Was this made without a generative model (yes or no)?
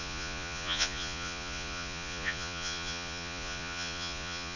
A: no